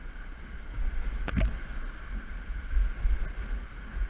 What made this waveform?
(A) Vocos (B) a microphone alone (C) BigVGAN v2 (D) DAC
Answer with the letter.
B